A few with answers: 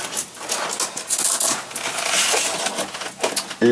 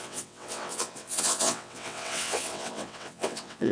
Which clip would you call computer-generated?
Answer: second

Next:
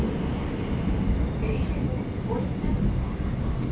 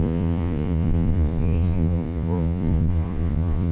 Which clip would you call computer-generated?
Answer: second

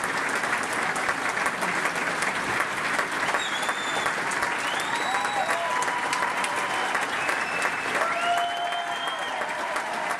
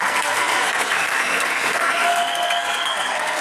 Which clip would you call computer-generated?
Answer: second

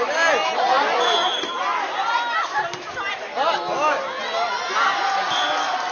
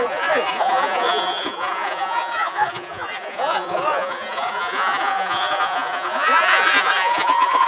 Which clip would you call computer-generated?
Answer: second